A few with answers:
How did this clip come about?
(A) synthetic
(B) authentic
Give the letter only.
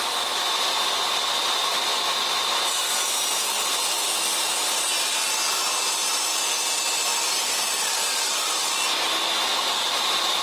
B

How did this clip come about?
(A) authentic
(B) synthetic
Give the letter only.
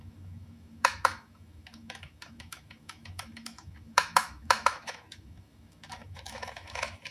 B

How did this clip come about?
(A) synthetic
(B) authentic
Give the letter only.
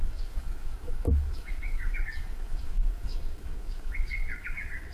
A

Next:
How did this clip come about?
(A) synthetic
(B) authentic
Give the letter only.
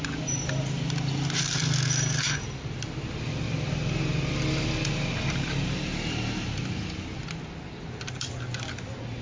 B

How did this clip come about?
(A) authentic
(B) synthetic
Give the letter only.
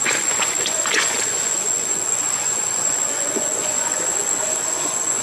B